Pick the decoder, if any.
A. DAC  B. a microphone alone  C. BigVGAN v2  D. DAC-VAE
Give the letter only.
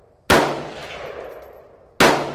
B